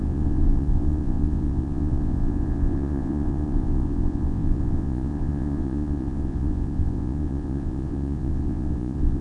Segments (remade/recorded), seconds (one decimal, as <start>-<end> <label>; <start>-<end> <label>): 0.0-9.2 remade